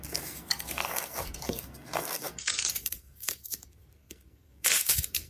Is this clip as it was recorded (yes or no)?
no